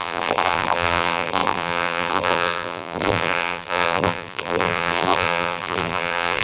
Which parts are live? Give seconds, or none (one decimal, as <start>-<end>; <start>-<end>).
none

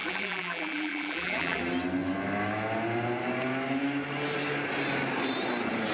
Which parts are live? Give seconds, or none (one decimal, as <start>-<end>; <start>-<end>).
1.6-5.9

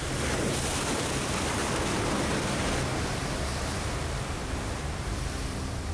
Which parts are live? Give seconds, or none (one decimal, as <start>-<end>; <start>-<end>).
0.0-0.7; 2.9-4.4

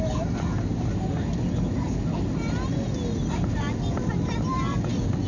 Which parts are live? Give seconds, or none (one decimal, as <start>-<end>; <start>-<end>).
0.0-5.3